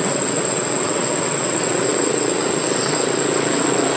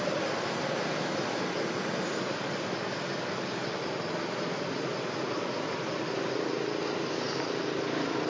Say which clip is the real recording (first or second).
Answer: second